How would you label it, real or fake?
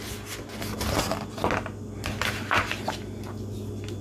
real